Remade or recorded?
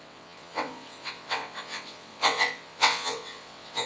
remade